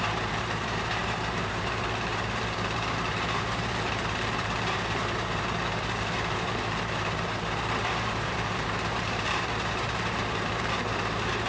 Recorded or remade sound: remade